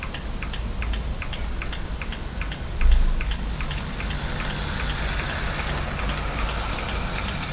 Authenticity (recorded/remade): recorded